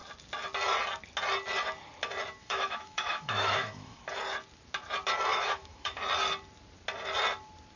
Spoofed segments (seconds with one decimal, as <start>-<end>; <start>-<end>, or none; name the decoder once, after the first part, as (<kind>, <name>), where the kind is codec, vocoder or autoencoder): 2.4-4.0 (autoencoder, DAC-VAE); 5.3-6.0